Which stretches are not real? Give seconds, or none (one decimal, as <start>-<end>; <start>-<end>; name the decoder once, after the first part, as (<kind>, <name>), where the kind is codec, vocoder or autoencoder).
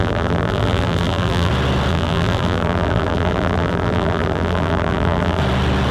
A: 0.0-1.5 (vocoder, BigVGAN v2); 1.9-5.4